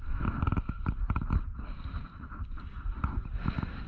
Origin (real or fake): real